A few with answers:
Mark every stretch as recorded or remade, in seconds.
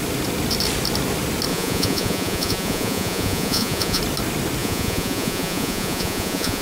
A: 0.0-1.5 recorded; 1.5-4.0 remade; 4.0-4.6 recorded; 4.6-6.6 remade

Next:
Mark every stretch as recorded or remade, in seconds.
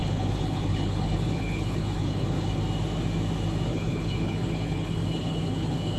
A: 0.0-2.6 remade; 2.6-3.7 recorded; 3.7-6.0 remade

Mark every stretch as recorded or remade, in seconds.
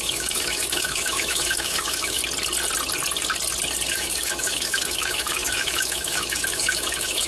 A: 0.0-2.2 remade; 2.2-3.9 recorded; 3.9-7.3 remade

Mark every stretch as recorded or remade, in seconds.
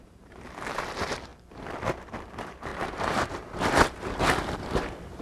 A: 0.0-1.3 remade; 1.3-2.1 recorded; 2.1-5.2 remade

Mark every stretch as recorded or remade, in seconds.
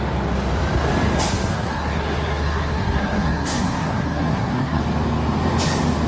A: 0.0-1.5 recorded; 1.5-4.8 remade; 4.8-6.1 recorded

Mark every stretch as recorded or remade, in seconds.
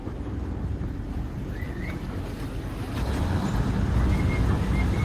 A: 0.0-5.0 recorded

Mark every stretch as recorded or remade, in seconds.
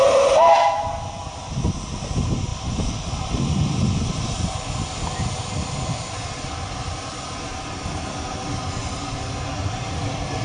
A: 0.0-2.5 recorded; 2.5-3.4 remade; 3.4-10.4 recorded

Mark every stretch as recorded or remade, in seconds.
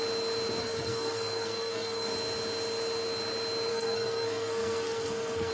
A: 0.0-0.6 recorded; 0.6-2.1 remade; 2.1-3.7 recorded; 3.7-5.5 remade